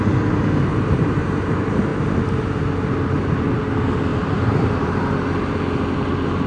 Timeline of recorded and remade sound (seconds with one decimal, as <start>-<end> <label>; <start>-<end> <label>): 0.0-0.7 recorded; 0.7-1.5 remade; 1.5-1.9 recorded; 1.9-2.6 remade; 2.6-4.1 recorded; 4.1-5.1 remade; 5.1-6.5 recorded